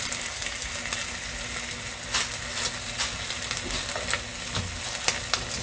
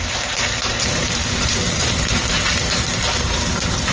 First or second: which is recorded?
first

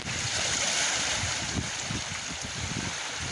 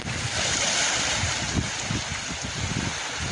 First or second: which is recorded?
second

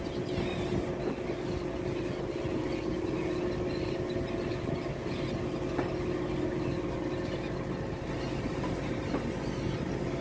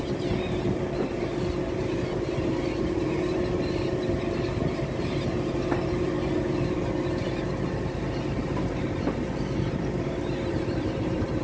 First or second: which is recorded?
first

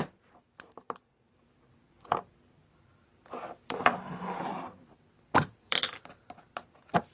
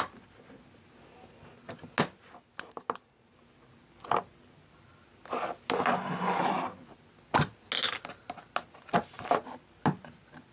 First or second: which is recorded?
second